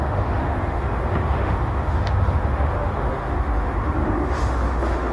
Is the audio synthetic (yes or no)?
yes